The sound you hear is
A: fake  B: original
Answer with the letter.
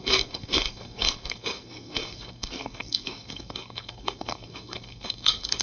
A